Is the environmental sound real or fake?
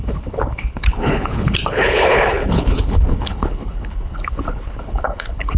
fake